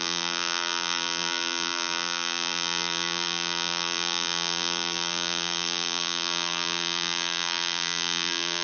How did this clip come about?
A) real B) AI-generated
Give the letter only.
B